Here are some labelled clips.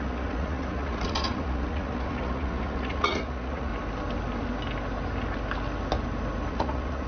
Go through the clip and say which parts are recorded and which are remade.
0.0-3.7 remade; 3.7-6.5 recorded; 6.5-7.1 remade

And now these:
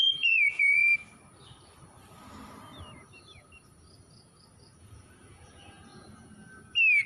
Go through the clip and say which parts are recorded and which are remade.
0.0-0.9 remade; 0.9-4.8 recorded; 4.8-5.8 remade; 5.8-7.1 recorded

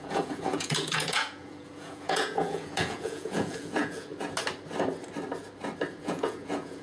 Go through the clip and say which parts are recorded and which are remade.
0.0-4.1 remade; 4.1-6.0 recorded; 6.0-6.8 remade

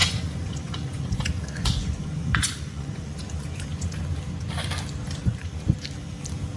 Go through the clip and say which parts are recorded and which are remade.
0.0-4.0 remade; 4.0-5.2 recorded; 5.2-5.8 remade; 5.8-6.6 recorded

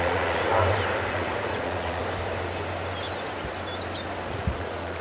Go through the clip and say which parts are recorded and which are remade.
0.0-0.5 remade; 0.5-1.1 recorded; 1.1-2.0 remade; 2.0-4.3 recorded; 4.3-5.0 remade

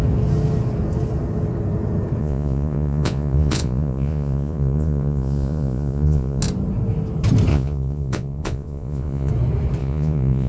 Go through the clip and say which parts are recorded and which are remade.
0.0-2.2 recorded; 2.2-6.4 remade; 6.4-7.5 recorded; 7.5-9.3 remade; 9.3-9.8 recorded; 9.8-10.5 remade